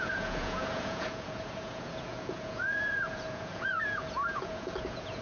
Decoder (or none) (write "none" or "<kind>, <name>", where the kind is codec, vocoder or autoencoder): vocoder, Vocos